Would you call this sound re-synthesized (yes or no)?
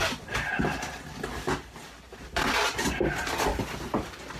no